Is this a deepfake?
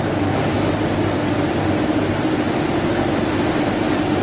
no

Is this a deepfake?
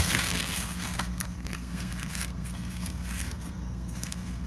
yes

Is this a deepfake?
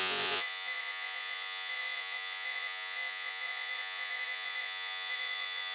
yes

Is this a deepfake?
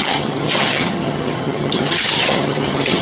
yes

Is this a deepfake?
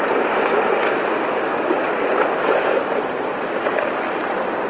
no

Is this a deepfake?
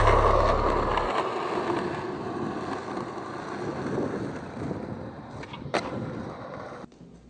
no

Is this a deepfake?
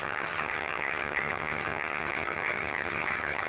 yes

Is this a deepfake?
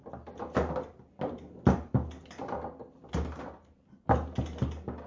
no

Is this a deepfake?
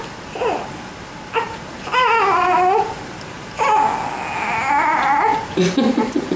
no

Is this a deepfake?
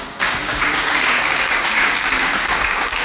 yes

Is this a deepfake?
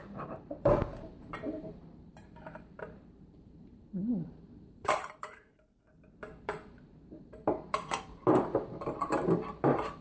yes